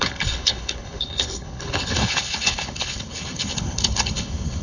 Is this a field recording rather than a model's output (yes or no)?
no